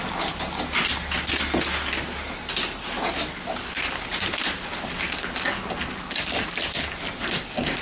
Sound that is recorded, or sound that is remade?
recorded